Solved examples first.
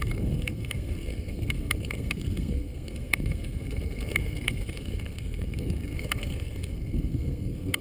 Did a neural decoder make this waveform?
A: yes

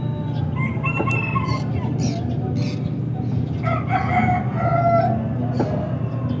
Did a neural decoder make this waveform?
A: no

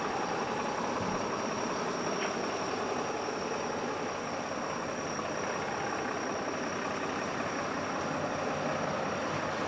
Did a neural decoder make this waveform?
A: no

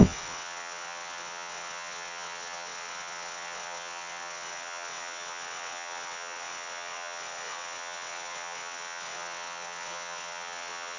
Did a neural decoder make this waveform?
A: yes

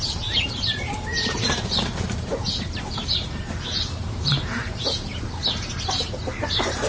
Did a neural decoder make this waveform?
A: yes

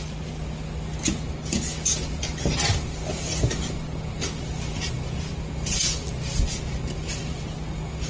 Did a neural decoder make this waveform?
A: no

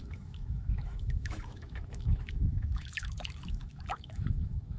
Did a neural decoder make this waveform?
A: yes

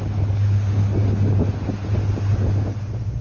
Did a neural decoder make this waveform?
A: no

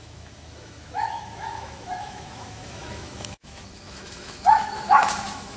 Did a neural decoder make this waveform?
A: yes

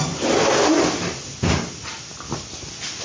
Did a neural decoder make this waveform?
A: no